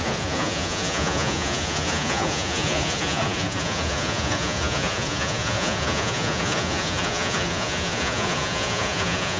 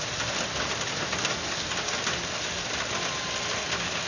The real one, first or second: second